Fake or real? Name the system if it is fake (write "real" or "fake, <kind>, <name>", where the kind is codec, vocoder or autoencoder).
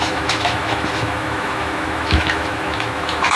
fake, autoencoder, DAC-VAE